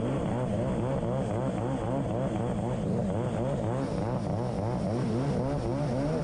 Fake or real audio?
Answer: real